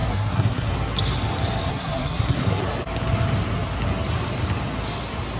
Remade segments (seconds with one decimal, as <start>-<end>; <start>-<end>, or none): 0.0-0.7; 1.7-2.6

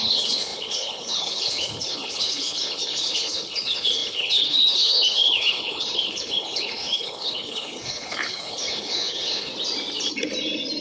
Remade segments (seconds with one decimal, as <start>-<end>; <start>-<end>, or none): 0.0-9.5

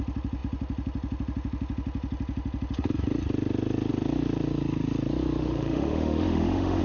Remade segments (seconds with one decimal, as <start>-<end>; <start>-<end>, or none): 5.4-6.8

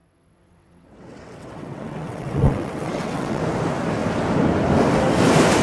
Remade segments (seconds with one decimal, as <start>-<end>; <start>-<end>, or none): 0.0-3.4

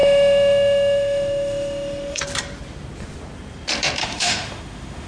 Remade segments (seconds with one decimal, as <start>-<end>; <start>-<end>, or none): 0.0-2.2; 4.0-5.1

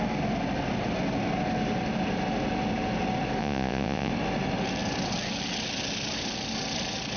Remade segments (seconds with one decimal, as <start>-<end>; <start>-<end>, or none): 3.4-4.1

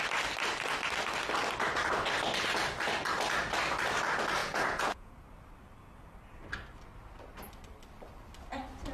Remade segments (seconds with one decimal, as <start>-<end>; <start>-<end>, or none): 4.4-5.1

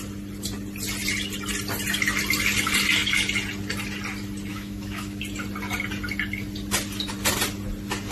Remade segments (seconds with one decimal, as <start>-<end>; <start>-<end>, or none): 4.5-5.2